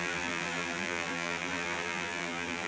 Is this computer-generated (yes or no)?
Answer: yes